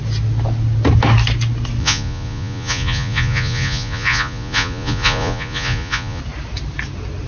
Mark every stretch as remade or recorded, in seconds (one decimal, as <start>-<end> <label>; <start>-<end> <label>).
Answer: 0.0-1.8 recorded; 1.8-6.2 remade; 6.2-7.3 recorded